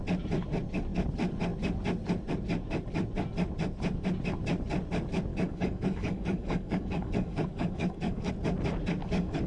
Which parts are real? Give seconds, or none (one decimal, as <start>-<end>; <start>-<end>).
0.0-5.3; 8.3-9.0